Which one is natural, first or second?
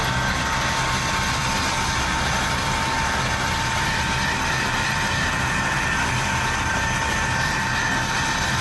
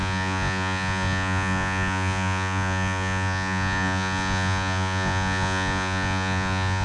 first